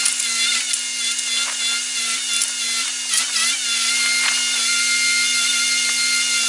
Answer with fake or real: real